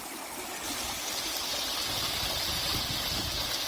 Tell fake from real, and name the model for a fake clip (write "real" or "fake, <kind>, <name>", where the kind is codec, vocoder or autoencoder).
real